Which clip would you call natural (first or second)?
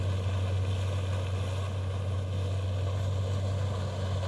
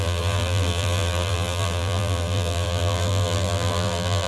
first